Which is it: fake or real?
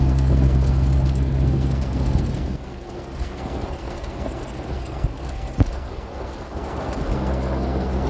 fake